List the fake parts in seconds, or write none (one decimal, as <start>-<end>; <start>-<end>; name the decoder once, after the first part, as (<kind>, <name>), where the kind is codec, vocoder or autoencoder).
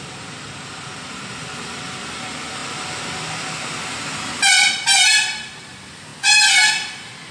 0.0-2.6 (vocoder, BigVGAN v2); 4.5-6.1; 6.7-7.3